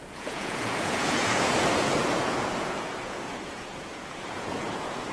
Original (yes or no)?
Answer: no